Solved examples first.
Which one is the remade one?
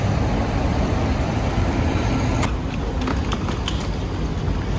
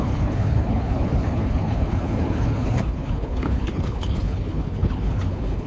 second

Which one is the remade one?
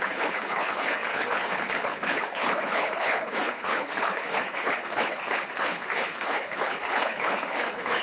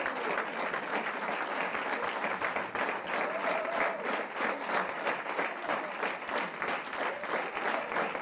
first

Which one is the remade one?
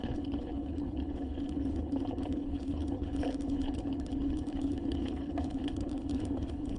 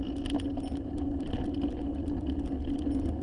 first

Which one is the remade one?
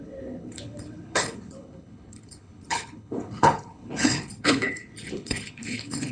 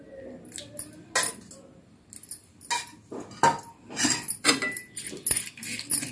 first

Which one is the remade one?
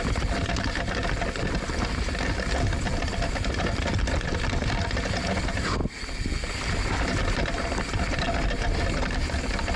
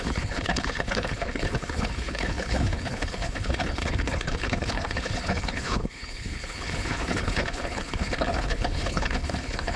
second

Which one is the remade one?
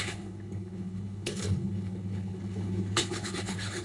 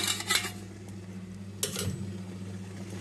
first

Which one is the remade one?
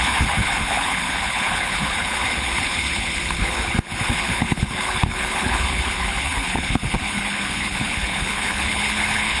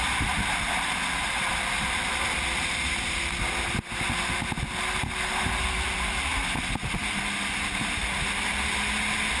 first